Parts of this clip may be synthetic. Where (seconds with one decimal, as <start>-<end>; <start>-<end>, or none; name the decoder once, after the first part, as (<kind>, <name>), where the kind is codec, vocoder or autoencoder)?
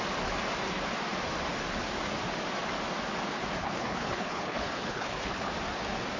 3.6-5.5 (codec, HILCodec)